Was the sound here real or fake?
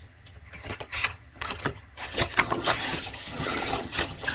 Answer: fake